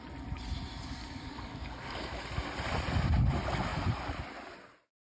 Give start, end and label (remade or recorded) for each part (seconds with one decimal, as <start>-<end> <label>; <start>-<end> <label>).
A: 0.0-1.0 recorded; 1.0-2.2 remade; 2.2-5.2 recorded

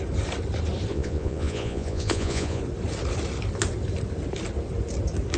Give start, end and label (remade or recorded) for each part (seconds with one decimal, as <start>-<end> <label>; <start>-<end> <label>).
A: 0.0-0.9 recorded; 0.9-2.6 remade; 2.6-5.4 recorded